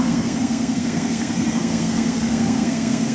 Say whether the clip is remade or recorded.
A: remade